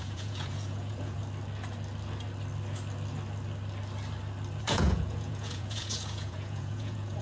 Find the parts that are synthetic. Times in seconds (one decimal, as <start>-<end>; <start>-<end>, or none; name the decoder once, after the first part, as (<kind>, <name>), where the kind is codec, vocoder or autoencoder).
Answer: 0.0-1.2 (vocoder, Vocos); 4.6-7.2